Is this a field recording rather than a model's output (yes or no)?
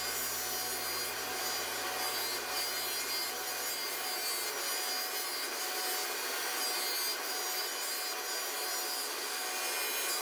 yes